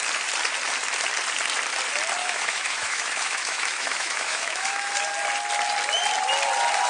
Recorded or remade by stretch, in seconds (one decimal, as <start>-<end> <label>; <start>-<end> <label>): 0.0-2.2 recorded; 2.2-4.9 remade; 4.9-6.9 recorded